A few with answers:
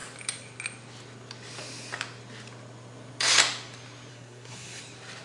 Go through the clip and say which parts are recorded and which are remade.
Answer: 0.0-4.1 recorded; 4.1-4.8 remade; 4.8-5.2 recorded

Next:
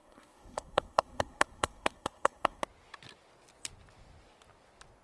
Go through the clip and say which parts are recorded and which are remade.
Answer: 0.0-2.6 remade; 2.6-5.0 recorded

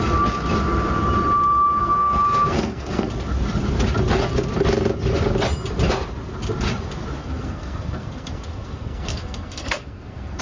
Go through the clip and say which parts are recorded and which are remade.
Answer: 0.0-1.8 recorded; 1.8-3.1 remade; 3.1-7.2 recorded; 7.2-10.4 remade

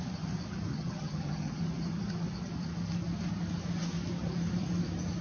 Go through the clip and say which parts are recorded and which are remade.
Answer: 0.0-0.7 recorded; 0.7-1.6 remade; 1.6-5.2 recorded

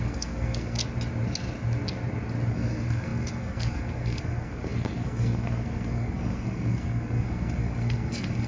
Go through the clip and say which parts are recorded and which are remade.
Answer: 0.0-0.8 remade; 0.8-2.5 recorded; 2.5-8.5 remade

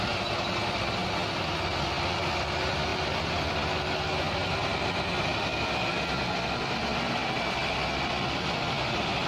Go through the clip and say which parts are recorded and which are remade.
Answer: 0.0-9.3 recorded

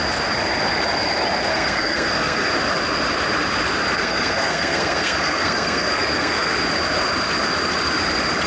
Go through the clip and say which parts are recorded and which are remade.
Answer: 0.0-1.5 recorded; 1.5-2.5 remade; 2.5-4.0 recorded; 4.0-6.5 remade; 6.5-8.5 recorded

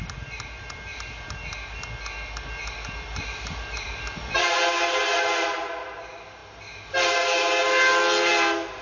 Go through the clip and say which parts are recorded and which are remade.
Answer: 0.0-8.8 recorded